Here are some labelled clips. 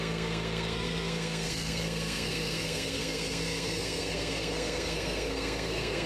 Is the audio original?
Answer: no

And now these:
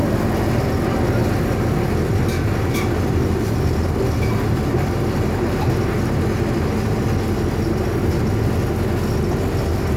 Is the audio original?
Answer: yes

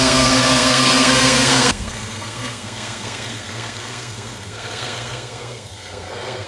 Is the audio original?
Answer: no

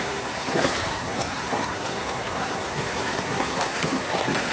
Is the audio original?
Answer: no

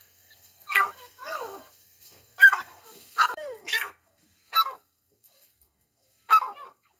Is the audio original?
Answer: no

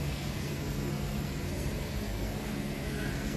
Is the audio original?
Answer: no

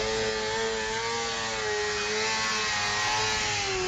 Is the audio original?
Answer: yes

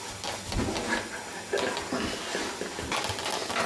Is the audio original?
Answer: yes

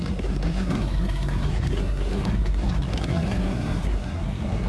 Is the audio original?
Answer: no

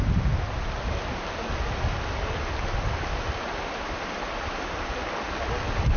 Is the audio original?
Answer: yes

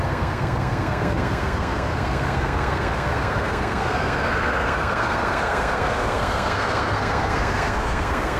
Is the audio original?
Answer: no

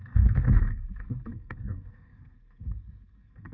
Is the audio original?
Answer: no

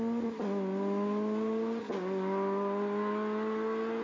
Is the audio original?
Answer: yes